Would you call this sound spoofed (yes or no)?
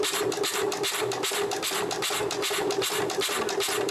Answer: no